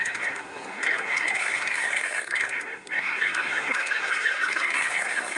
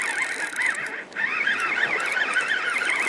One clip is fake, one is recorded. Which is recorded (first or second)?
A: second